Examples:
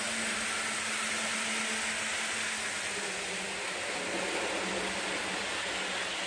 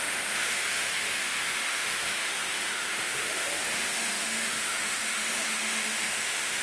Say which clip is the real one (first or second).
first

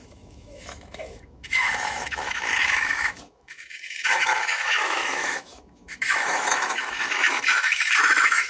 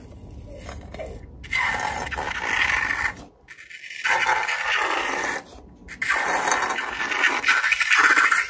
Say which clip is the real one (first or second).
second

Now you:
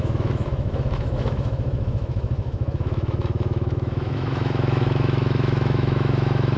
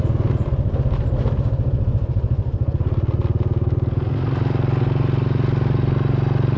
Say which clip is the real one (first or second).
second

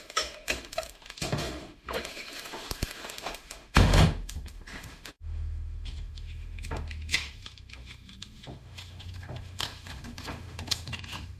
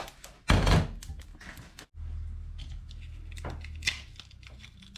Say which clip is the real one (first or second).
second